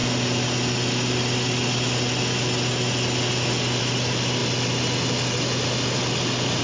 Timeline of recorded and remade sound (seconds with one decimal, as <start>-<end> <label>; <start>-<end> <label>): 0.0-6.6 recorded